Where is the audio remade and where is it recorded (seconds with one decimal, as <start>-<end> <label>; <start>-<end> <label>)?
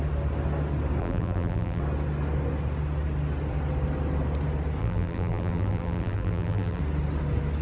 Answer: 0.0-1.0 recorded; 1.0-1.8 remade; 1.8-4.8 recorded; 4.8-6.8 remade; 6.8-7.6 recorded